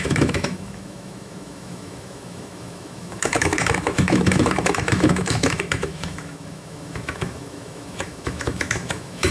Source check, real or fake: fake